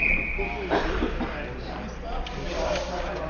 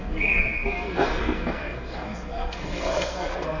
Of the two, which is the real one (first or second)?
first